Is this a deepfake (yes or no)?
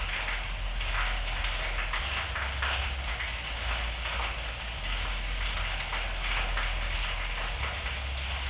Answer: no